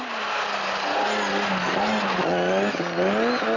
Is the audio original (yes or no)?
yes